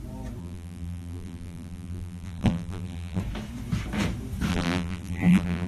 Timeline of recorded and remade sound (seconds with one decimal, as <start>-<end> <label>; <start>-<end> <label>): 0.0-0.4 recorded; 0.4-3.2 remade; 3.2-4.5 recorded; 4.5-5.7 remade